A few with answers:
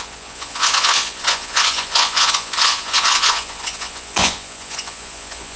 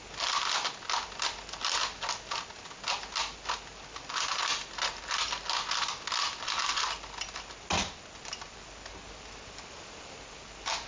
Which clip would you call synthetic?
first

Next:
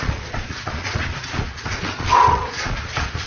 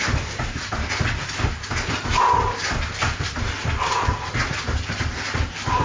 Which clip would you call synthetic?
first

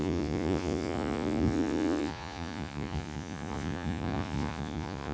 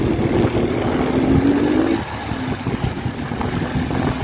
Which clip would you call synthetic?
first